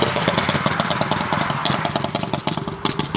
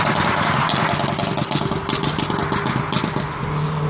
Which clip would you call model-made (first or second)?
first